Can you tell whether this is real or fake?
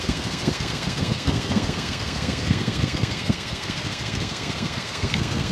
fake